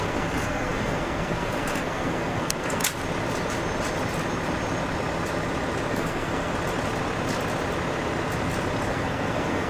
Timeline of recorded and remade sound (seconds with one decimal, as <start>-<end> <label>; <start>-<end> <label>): 0.0-2.8 remade; 2.8-5.9 recorded; 5.9-6.5 remade; 6.5-8.9 recorded; 8.9-9.7 remade